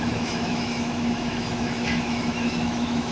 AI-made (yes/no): yes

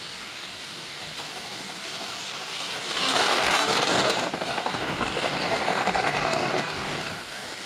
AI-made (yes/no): yes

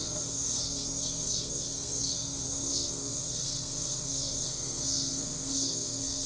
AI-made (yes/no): yes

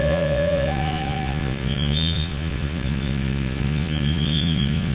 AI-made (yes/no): yes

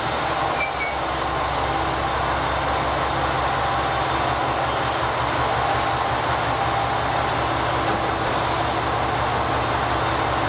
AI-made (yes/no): no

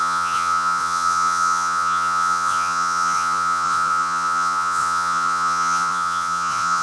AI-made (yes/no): yes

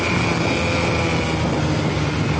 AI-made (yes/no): no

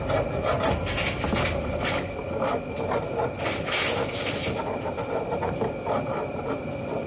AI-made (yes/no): no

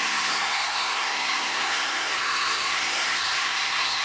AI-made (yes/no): yes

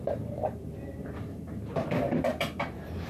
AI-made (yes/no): yes